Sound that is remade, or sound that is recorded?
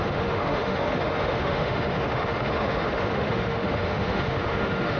remade